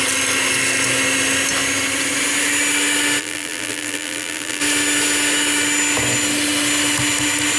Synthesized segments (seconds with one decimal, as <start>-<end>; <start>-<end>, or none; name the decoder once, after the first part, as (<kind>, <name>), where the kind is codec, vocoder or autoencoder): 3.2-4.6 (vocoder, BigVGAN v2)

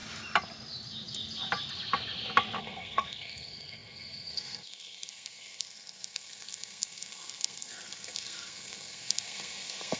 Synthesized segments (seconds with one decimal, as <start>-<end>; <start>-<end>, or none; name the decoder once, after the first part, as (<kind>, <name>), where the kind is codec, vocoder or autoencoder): 2.6-10.0 (codec, SNAC)

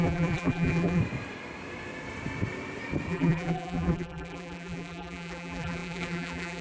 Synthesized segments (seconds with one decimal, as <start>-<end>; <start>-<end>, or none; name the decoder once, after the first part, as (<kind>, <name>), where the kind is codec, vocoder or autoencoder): 0.0-1.0 (vocoder, BigVGAN v2); 3.1-6.6

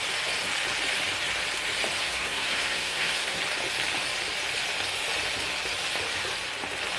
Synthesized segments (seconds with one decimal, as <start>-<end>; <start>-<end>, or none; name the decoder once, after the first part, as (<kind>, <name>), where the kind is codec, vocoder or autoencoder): 2.0-3.4 (codec, SNAC)

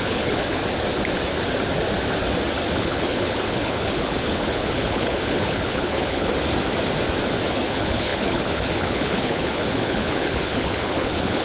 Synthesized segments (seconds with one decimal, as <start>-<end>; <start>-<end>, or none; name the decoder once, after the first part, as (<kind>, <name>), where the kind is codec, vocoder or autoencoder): 0.0-0.6 (codec, HILCodec); 2.8-6.3; 7.5-11.4